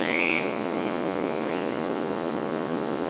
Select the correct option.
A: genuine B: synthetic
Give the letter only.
B